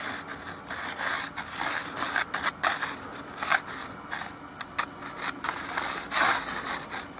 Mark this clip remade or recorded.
recorded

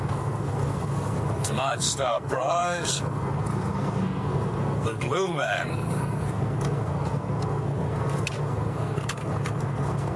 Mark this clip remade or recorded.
remade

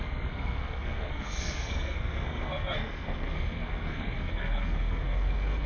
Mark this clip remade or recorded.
remade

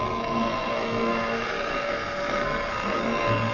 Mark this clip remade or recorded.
remade